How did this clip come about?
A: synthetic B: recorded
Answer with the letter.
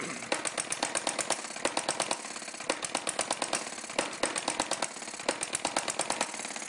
B